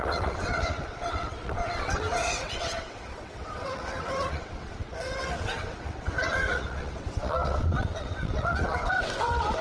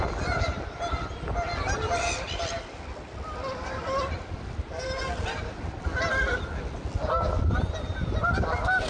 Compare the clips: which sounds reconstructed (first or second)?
first